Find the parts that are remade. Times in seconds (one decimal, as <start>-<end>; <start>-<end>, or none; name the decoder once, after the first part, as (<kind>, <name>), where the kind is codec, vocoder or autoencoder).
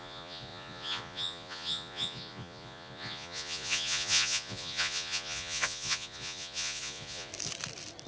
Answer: 0.0-7.3 (vocoder, Vocos)